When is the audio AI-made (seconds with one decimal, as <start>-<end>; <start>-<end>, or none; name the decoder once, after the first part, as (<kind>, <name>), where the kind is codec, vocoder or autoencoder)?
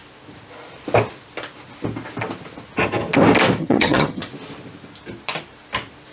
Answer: 3.6-4.3 (vocoder, HiFi-GAN)